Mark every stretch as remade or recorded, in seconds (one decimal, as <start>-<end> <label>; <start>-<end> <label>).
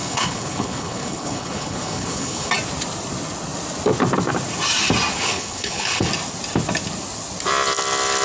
0.0-2.5 remade; 2.5-5.1 recorded; 5.1-6.1 remade; 6.1-8.2 recorded